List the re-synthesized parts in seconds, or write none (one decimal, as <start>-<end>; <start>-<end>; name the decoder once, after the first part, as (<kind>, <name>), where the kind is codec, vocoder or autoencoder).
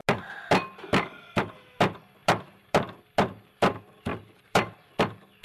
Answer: 2.2-3.0 (vocoder, BigVGAN v2); 4.1-4.9